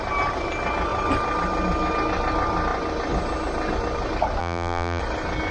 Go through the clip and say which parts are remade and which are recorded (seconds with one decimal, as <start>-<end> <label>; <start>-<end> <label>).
0.0-4.4 recorded; 4.4-5.0 remade; 5.0-5.5 recorded